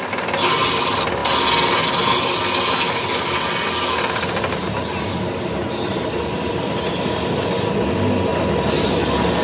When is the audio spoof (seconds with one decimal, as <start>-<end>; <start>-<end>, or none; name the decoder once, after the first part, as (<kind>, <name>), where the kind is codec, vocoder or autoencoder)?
none